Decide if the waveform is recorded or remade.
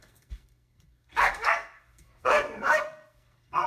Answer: remade